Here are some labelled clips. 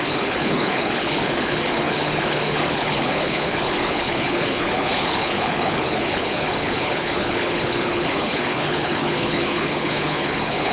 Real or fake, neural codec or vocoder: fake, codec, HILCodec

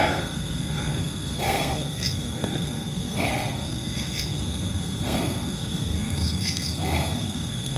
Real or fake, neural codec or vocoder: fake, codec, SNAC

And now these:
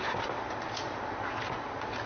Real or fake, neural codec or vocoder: real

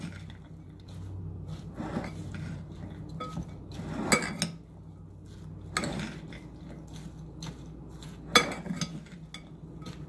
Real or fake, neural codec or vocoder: real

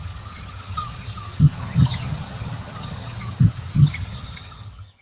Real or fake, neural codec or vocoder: fake, vocoder, HiFi-GAN